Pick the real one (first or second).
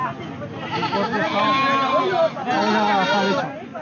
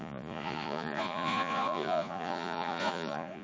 first